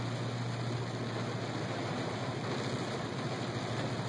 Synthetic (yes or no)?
no